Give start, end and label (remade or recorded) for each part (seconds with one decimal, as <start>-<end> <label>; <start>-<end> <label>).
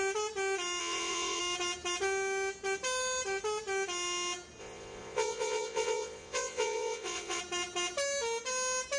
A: 0.0-0.8 recorded; 0.8-1.4 remade; 1.4-4.6 recorded; 4.6-7.4 remade; 7.4-9.0 recorded